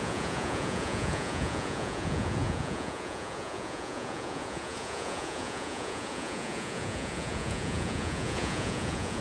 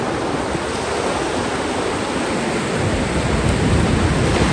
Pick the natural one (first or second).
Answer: second